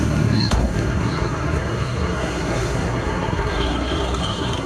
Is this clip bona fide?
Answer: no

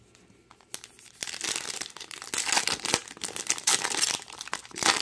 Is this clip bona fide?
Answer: yes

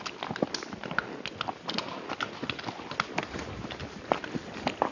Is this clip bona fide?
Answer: yes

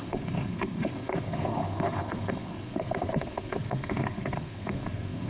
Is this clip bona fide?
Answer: no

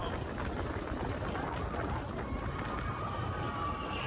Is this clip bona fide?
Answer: yes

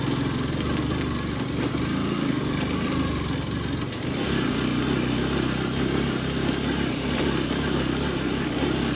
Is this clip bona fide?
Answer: yes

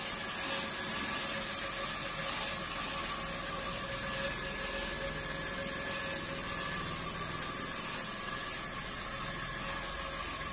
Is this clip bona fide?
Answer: yes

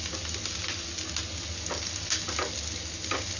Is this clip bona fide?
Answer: yes